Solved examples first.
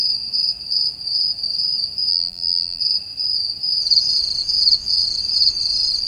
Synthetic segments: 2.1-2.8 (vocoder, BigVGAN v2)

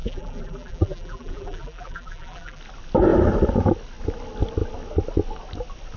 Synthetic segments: 0.0-2.6 (vocoder, BigVGAN v2)

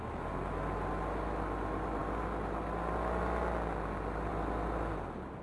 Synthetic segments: none

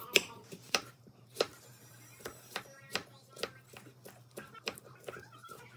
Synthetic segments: 0.0-3.0 (vocoder, BigVGAN v2); 4.1-5.8

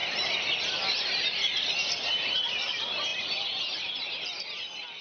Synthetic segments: 0.0-5.0 (vocoder, BigVGAN v2)

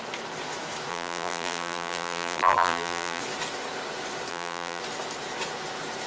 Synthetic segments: 0.9-3.2 (vocoder, BigVGAN v2); 4.3-4.8